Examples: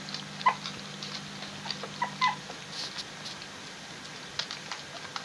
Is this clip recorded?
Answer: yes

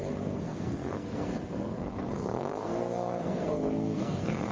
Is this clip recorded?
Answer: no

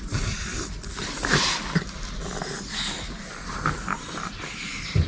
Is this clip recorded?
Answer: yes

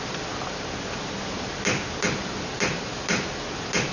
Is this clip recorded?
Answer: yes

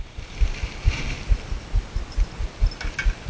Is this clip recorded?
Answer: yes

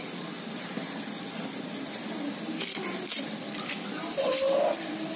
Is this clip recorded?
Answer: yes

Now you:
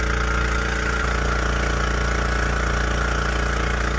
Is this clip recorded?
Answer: yes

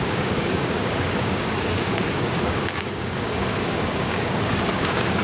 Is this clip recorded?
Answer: no